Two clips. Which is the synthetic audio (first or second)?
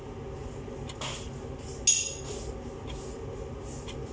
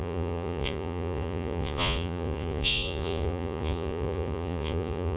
second